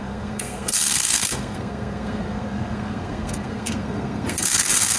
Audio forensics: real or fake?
fake